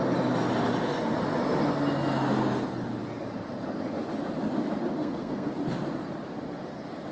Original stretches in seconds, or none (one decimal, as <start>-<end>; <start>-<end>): 0.0-5.0; 5.5-7.1